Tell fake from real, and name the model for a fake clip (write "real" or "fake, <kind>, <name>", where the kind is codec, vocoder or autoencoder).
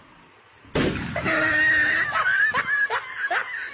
real